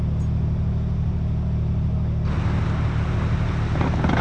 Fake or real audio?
real